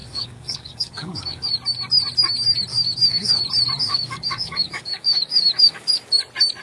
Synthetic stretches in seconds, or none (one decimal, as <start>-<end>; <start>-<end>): 0.0-1.5; 2.7-3.4; 3.8-5.9